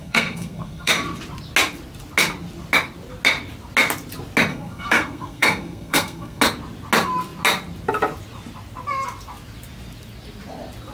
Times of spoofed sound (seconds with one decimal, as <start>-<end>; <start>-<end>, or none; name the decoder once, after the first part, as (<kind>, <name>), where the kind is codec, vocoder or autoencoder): 0.0-0.9 (codec, SNAC); 4.5-6.4